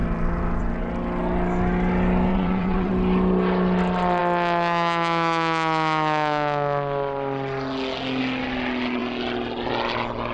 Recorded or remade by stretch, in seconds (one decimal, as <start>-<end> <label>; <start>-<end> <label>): 0.0-2.3 recorded; 2.3-2.9 remade; 2.9-10.3 recorded